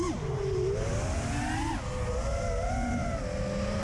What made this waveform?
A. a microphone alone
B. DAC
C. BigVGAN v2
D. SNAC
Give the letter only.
A